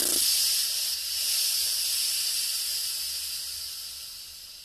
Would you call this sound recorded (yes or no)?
yes